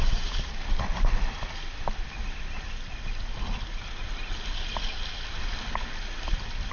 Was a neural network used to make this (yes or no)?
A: no